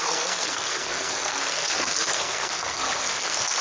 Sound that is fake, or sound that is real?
fake